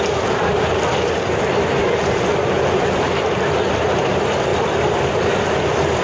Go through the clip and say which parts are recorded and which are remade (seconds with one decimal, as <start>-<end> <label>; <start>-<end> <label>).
0.0-6.0 remade